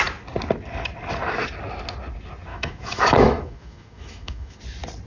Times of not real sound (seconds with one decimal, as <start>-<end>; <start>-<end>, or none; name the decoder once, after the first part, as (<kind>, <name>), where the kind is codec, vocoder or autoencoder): 2.5-4.6 (autoencoder, DAC-VAE)